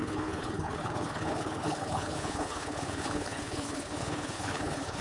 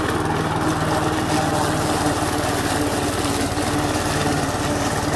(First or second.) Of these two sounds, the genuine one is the second